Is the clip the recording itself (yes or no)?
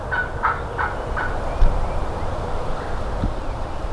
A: yes